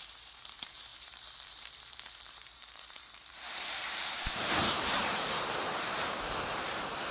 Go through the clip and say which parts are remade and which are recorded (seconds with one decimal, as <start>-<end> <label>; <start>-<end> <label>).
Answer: 0.0-7.1 remade